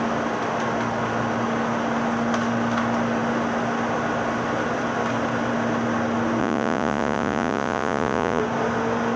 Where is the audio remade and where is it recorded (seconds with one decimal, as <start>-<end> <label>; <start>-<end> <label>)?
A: 0.0-6.4 recorded; 6.4-8.4 remade; 8.4-9.2 recorded